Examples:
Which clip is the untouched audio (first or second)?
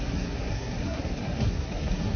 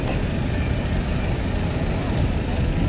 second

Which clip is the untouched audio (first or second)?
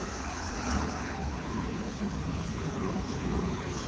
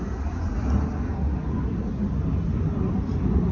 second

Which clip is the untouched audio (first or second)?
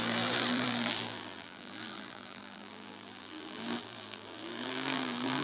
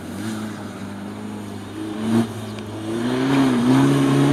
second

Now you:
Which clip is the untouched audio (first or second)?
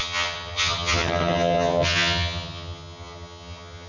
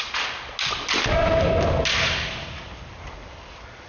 second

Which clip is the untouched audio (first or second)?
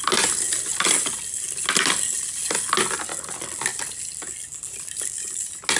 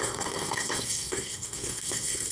first